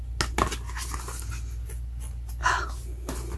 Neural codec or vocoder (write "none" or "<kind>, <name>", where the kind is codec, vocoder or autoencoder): none